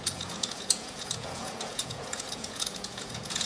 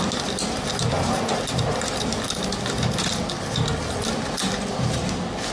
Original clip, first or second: second